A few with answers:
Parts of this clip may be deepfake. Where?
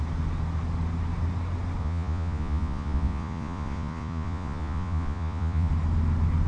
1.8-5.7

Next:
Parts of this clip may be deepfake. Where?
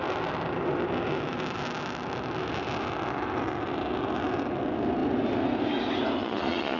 6.2-6.8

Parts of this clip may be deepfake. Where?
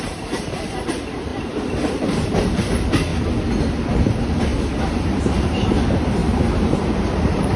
0.0-1.3; 1.9-3.1; 3.9-7.6